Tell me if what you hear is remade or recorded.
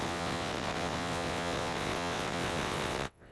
remade